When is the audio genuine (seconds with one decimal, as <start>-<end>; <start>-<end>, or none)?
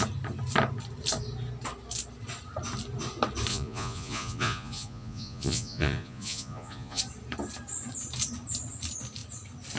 0.0-3.5; 7.0-9.8